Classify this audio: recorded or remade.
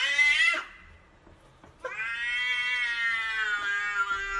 recorded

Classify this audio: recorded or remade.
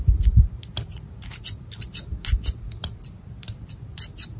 recorded